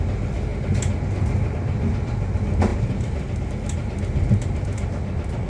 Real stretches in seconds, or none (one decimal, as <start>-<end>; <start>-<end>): 0.0-5.5